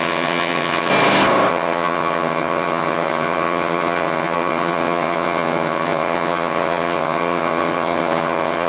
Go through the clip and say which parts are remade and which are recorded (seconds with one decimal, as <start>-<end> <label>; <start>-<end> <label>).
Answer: 0.0-0.9 remade; 0.9-1.5 recorded; 1.5-8.7 remade